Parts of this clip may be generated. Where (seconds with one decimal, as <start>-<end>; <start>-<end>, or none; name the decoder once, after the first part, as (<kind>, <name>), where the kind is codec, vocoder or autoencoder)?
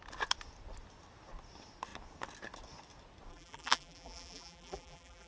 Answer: 3.3-5.3 (vocoder, BigVGAN v2)